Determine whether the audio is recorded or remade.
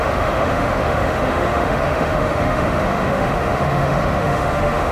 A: remade